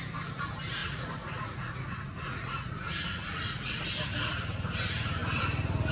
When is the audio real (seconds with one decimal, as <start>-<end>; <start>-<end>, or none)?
0.0-0.8; 4.3-5.9